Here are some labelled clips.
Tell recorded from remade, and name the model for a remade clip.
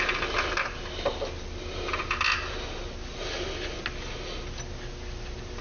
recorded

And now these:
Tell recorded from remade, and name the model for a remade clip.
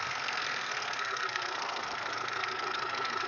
remade, codec, SNAC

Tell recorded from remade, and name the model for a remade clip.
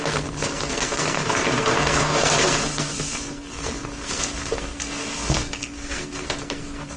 remade, codec, SNAC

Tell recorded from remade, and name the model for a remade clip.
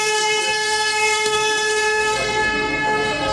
remade, codec, SNAC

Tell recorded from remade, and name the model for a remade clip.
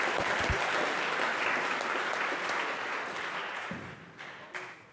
recorded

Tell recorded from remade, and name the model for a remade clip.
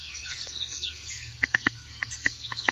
remade, codec, SNAC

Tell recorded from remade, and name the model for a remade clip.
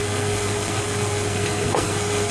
remade, codec, SNAC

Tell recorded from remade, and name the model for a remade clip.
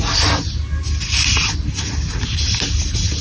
recorded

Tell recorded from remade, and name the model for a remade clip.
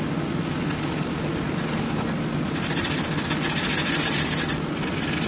recorded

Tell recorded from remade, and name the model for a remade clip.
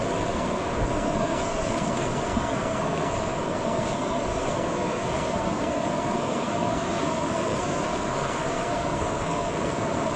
remade, codec, SNAC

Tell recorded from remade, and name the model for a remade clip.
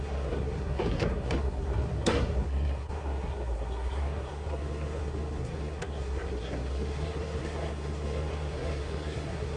remade, codec, SNAC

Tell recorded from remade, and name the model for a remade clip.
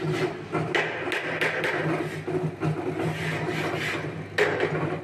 recorded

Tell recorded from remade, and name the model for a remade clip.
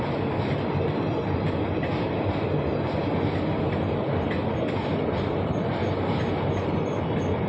recorded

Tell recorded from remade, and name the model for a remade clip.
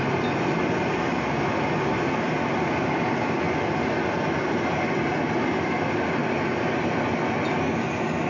recorded